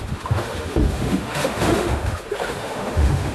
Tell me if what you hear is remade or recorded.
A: remade